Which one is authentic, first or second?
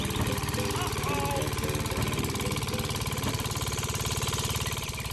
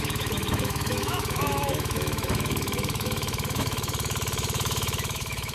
first